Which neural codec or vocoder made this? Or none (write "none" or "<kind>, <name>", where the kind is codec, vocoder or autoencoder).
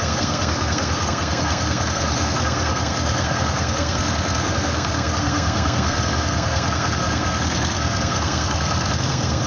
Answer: codec, SNAC